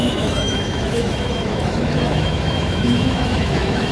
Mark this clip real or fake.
fake